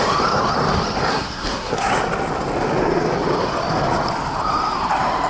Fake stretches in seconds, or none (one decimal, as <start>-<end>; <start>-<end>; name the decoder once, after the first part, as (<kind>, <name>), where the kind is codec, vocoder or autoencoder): 1.1-1.9 (codec, SNAC)